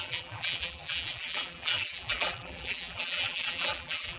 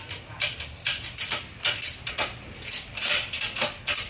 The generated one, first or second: first